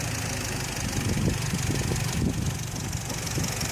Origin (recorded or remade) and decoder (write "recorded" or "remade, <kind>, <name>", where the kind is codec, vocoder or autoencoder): recorded